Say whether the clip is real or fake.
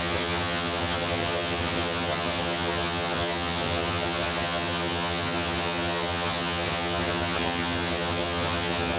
fake